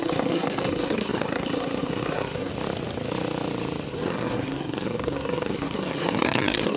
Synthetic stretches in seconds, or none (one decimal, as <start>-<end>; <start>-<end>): 0.0-2.5; 3.9-6.8